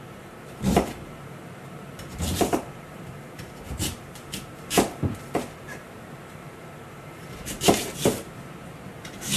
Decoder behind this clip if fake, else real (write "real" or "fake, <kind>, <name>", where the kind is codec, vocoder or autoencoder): fake, vocoder, BigVGAN v2